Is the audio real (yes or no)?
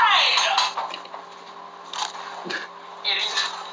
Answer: yes